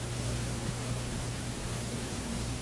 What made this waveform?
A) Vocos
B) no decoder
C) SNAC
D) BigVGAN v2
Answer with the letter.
C